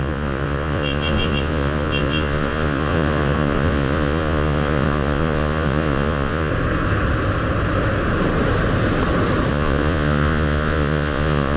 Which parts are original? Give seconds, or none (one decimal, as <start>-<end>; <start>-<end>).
6.5-9.5